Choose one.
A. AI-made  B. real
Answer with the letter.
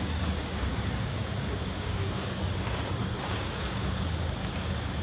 A